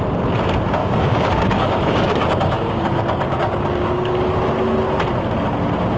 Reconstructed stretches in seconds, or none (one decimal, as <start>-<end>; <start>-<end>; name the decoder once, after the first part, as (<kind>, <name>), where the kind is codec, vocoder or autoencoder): 0.8-4.4 (codec, DAC)